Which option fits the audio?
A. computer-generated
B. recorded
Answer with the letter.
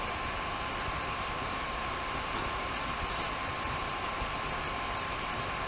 A